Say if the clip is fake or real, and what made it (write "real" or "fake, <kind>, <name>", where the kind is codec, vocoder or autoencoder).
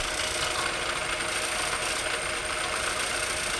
real